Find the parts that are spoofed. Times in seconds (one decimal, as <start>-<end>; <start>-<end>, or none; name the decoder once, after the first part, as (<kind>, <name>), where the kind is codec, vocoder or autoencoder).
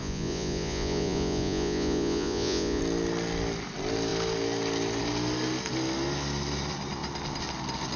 0.0-2.8 (vocoder, Vocos)